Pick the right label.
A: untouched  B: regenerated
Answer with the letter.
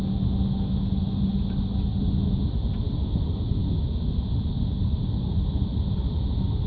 A